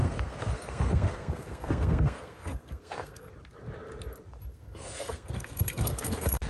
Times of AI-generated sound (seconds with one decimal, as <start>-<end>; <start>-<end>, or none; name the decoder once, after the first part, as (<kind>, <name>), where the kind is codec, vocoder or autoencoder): 0.0-3.3 (codec, SNAC); 4.5-6.5